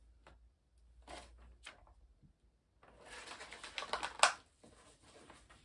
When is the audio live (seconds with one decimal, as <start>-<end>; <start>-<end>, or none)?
0.0-5.6

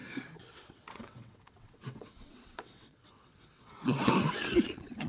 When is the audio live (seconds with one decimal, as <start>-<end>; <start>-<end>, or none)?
0.0-0.6

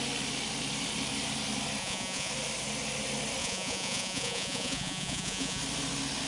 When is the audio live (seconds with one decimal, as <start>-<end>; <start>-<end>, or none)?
0.0-1.8; 2.3-3.4; 5.6-6.3

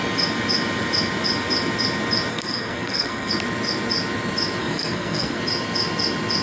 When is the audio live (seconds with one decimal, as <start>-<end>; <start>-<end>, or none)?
0.0-2.3; 3.3-4.6; 5.4-6.4

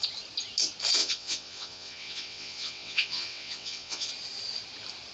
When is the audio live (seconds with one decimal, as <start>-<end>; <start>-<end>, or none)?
0.0-1.0; 4.1-5.1